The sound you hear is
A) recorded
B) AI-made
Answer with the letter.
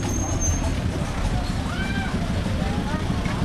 A